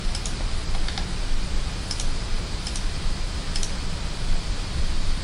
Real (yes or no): yes